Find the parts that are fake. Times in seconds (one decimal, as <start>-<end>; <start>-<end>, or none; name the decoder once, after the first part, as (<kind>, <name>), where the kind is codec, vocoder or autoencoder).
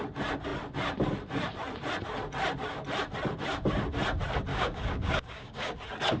4.5-5.7 (codec, DAC)